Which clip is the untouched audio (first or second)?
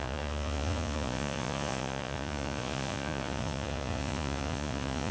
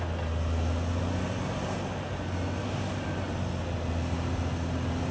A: second